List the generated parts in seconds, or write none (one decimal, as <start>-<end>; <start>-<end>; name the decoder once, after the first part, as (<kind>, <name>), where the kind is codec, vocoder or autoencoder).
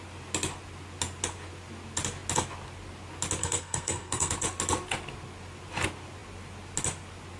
3.4-4.3 (codec, SNAC)